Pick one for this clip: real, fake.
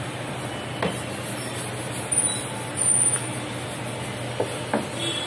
real